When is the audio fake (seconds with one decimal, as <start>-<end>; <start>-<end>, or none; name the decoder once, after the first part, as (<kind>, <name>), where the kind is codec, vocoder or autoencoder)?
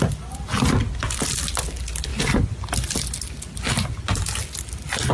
none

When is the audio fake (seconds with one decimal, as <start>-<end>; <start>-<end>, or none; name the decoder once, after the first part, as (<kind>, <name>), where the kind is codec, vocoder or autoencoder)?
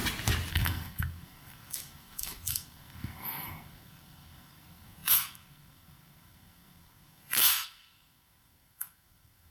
0.5-9.5 (codec, SNAC)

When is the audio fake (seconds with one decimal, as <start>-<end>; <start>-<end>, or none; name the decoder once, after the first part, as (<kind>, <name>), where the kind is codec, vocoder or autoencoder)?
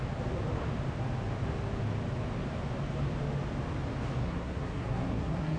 4.2-5.6 (codec, SNAC)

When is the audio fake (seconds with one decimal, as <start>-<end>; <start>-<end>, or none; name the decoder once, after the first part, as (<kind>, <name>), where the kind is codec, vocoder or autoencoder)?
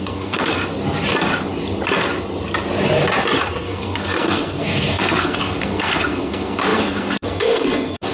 0.0-0.6 (codec, SNAC); 3.4-8.1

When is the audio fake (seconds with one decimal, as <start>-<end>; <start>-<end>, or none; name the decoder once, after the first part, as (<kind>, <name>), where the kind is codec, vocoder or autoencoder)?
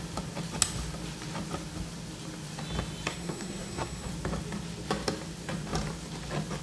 3.1-4.1 (codec, SNAC)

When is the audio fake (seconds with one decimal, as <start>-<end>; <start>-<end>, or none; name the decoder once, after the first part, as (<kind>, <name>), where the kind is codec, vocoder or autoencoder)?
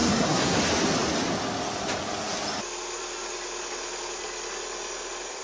0.0-0.6 (codec, SNAC)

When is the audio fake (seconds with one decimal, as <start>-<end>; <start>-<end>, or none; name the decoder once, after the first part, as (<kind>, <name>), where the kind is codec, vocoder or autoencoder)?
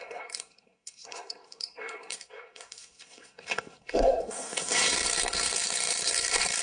0.0-6.6 (codec, SNAC)